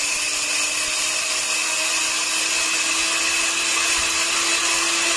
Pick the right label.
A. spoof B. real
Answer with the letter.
B